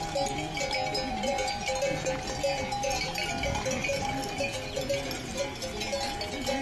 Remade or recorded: recorded